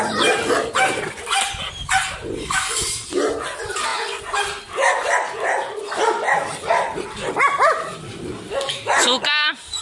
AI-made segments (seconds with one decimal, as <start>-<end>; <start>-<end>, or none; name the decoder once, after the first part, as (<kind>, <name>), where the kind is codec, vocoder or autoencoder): 2.4-2.9 (codec, DAC)